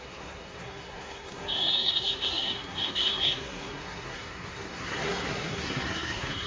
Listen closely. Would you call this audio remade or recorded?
remade